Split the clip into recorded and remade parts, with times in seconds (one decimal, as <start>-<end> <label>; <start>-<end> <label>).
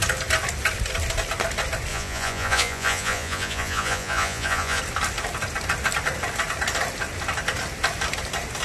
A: 0.0-1.9 recorded; 1.9-4.8 remade; 4.8-8.6 recorded